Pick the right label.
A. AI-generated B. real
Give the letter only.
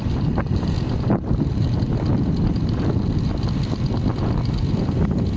B